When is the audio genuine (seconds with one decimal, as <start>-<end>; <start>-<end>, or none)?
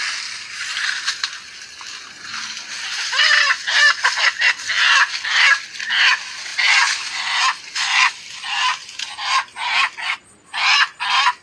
0.0-11.4